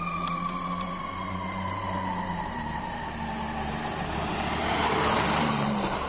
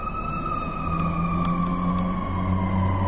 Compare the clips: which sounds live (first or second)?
second